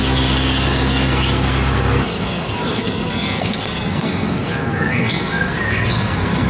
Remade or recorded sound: remade